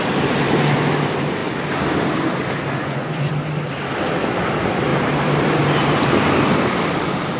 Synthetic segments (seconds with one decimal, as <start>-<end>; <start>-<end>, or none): 2.8-3.3